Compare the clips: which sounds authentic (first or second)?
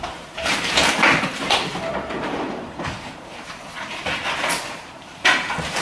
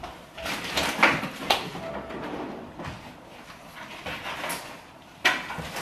second